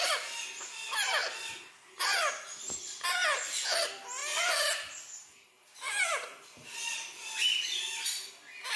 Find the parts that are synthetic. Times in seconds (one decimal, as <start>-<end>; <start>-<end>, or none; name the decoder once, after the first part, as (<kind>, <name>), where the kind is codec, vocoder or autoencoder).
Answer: 4.2-7.2 (vocoder, BigVGAN v2)